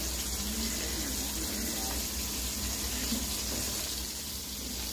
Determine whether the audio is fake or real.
real